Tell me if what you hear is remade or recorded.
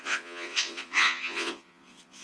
remade